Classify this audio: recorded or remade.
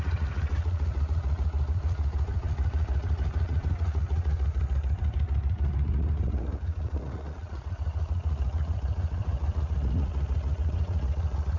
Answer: remade